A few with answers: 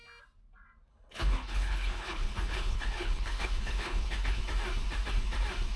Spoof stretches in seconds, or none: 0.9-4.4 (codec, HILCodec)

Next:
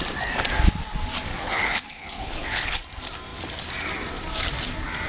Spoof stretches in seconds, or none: 1.3-2.8 (codec, HILCodec)

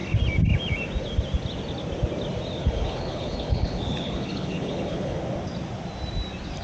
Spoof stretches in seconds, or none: 2.6-5.2 (codec, HILCodec)

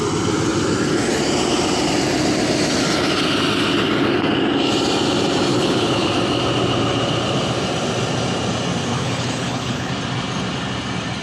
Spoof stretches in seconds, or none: 5.5-6.1 (codec, HILCodec); 8.9-9.9

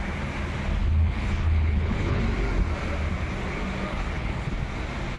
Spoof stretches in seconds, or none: 0.8-2.2 (codec, HILCodec); 3.9-4.5

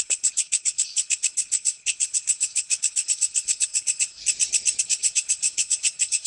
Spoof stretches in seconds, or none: 0.0-4.2 (codec, HILCodec); 4.8-6.3